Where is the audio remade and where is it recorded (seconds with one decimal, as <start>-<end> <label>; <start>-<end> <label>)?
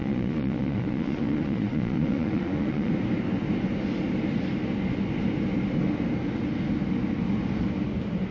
0.0-2.9 remade; 2.9-8.3 recorded